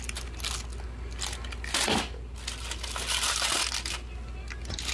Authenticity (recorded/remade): recorded